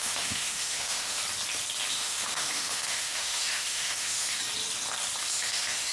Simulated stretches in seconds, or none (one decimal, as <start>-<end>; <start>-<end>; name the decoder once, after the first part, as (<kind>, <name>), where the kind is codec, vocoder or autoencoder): 0.0-1.2 (autoencoder, DAC-VAE); 1.9-4.4; 5.2-5.9